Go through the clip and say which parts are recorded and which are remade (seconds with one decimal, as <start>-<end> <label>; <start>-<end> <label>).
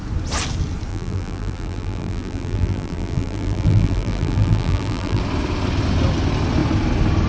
0.0-0.9 recorded; 0.9-5.2 remade; 5.2-7.3 recorded